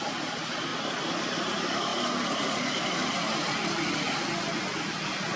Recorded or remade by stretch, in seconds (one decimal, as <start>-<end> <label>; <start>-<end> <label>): 0.0-5.4 recorded